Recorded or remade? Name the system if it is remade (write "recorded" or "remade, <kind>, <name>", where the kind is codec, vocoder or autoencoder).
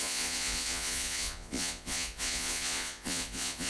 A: remade, vocoder, Vocos